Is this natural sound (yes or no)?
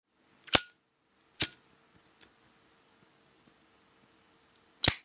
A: yes